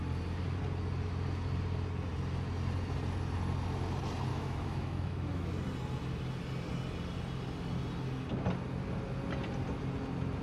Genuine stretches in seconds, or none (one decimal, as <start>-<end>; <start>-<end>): 0.0-4.3; 5.5-10.4